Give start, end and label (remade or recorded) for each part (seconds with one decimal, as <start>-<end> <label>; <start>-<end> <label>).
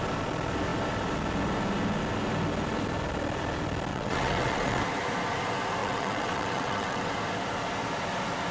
0.0-3.9 recorded; 3.9-4.8 remade; 4.8-5.8 recorded; 5.8-7.1 remade; 7.1-8.5 recorded